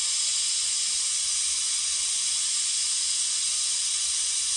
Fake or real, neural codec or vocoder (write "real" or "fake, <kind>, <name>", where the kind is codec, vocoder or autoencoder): fake, vocoder, Vocos